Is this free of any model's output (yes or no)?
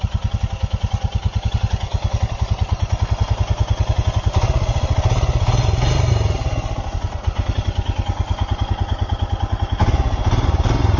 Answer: yes